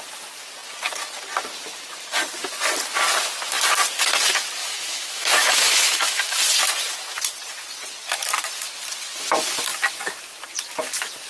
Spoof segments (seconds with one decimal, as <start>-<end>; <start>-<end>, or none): 4.6-6.4